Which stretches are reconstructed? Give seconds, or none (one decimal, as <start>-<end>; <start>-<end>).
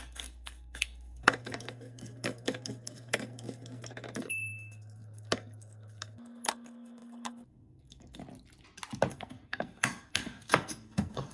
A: 0.0-8.2; 9.1-11.3